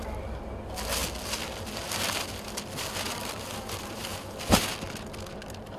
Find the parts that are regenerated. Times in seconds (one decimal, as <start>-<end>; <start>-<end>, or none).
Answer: none